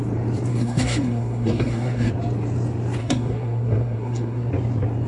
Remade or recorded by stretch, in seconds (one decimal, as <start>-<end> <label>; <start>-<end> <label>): 0.0-0.5 recorded; 0.5-2.1 remade; 2.1-3.0 recorded; 3.0-4.5 remade; 4.5-5.1 recorded